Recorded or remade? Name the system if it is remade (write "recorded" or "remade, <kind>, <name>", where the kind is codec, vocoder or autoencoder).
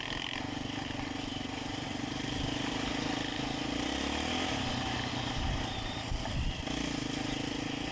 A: recorded